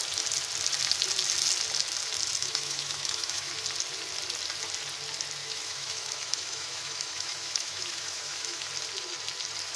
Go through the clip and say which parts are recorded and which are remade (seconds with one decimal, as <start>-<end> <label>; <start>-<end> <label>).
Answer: 0.0-2.4 recorded; 2.4-3.5 remade; 3.5-5.4 recorded; 5.4-8.7 remade; 8.7-9.8 recorded

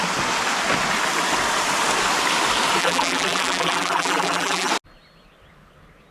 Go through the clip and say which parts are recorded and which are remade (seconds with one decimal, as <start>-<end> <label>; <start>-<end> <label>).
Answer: 0.0-2.8 recorded; 2.8-4.7 remade; 4.7-6.1 recorded

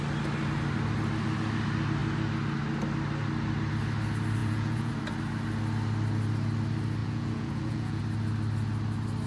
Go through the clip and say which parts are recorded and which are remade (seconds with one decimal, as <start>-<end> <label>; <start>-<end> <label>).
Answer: 0.0-4.4 recorded; 4.4-4.9 remade; 4.9-7.0 recorded; 7.0-8.0 remade; 8.0-9.3 recorded

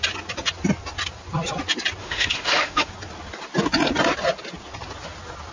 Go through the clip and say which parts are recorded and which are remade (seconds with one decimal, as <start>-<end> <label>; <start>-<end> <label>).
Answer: 0.0-2.0 recorded; 2.0-2.9 remade; 2.9-5.5 recorded

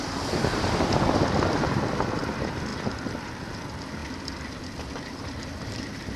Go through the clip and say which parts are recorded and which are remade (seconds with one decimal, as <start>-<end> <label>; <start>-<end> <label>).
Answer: 0.0-6.2 remade